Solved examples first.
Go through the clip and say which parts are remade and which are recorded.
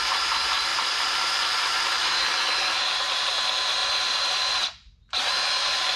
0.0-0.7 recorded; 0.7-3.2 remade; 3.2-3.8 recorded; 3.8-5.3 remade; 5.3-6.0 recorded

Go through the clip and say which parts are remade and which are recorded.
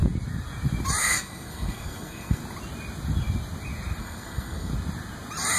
0.0-1.0 recorded; 1.0-2.4 remade; 2.4-4.0 recorded; 4.0-4.7 remade; 4.7-5.6 recorded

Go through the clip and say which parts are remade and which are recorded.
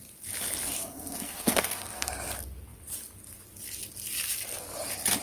0.0-0.8 recorded; 0.8-2.1 remade; 2.1-5.2 recorded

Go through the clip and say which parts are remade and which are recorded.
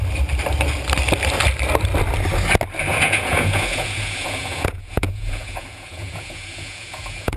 0.0-2.9 recorded; 2.9-7.4 remade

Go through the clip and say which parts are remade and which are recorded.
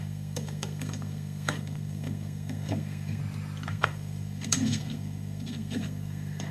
0.0-3.2 remade; 3.2-3.7 recorded; 3.7-6.5 remade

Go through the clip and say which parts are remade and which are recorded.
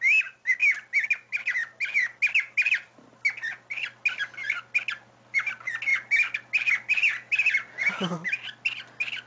0.0-9.3 recorded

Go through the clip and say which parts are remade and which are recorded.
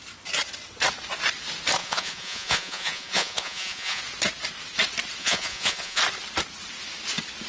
0.0-1.8 recorded; 1.8-4.0 remade; 4.0-5.2 recorded; 5.2-6.0 remade; 6.0-7.5 recorded